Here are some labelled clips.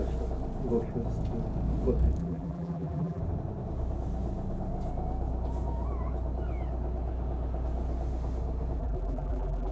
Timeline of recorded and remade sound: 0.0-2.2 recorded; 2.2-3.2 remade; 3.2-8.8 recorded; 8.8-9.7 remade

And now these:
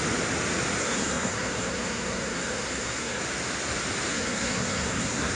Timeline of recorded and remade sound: 0.0-0.8 recorded; 0.8-3.2 remade; 3.2-4.1 recorded; 4.1-5.3 remade